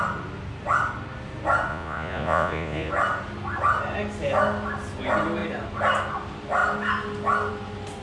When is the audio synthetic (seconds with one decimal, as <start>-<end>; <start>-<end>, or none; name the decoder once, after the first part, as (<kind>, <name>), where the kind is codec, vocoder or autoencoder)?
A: 1.7-2.9 (vocoder, Vocos)